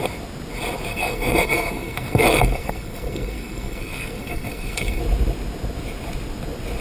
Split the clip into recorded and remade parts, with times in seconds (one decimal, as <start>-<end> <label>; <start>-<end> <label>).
0.0-0.9 recorded; 0.9-5.0 remade; 5.0-6.8 recorded